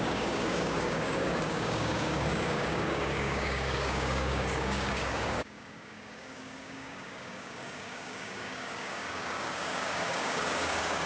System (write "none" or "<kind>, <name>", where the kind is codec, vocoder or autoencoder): codec, DAC